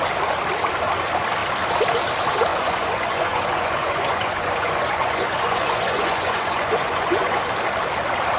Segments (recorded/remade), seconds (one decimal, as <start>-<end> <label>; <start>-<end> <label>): 0.0-2.5 recorded; 2.5-7.4 remade; 7.4-8.4 recorded